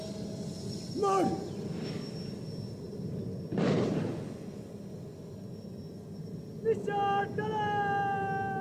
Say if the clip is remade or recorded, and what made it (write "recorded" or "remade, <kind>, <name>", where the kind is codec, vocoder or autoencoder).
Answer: recorded